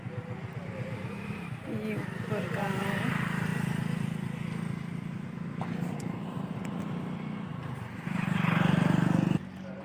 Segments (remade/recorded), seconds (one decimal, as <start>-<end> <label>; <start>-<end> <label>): 0.0-7.5 recorded; 7.5-8.3 remade; 8.3-9.8 recorded